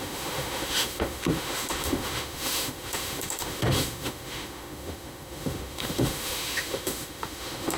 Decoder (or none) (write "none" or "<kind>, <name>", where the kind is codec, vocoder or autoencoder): autoencoder, DAC-VAE